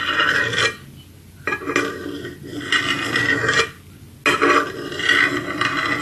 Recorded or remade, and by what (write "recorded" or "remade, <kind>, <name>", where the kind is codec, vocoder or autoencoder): recorded